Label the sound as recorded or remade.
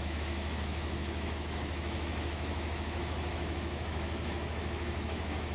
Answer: remade